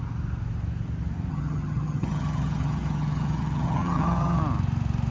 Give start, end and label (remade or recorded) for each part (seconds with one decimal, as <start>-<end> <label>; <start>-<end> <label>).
0.0-1.3 recorded; 1.3-4.4 remade; 4.4-5.1 recorded

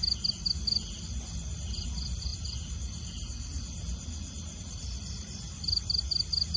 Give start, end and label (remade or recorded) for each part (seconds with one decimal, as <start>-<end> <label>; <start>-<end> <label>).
0.0-6.6 recorded